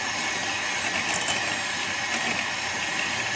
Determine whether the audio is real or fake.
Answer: real